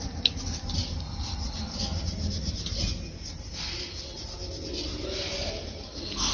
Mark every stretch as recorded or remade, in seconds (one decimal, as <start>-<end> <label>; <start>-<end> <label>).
0.0-6.3 recorded